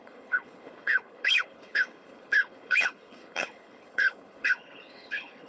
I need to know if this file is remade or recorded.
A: remade